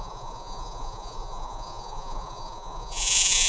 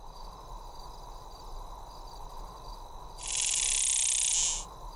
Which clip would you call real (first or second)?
second